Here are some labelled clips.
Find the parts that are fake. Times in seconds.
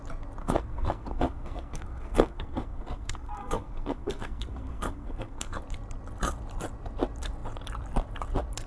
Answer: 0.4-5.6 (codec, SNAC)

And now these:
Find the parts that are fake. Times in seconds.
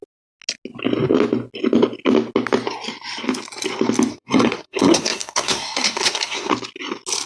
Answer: 4.1-6.5 (codec, SNAC)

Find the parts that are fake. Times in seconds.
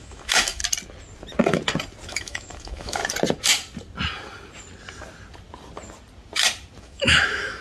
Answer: 0.0-0.6 (autoencoder, DAC-VAE); 2.1-3.0; 6.8-7.6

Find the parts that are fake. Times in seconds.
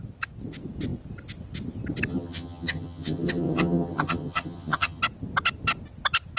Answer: 2.1-5.0 (vocoder, HiFi-GAN)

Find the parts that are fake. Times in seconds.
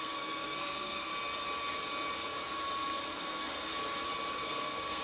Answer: 0.0-1.1 (codec, SNAC); 3.2-3.7; 4.3-5.0